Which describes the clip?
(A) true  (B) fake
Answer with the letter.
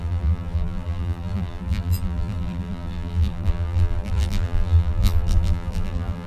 B